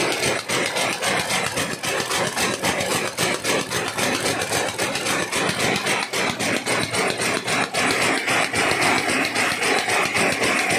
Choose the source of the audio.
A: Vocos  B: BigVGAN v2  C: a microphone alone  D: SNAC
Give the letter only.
C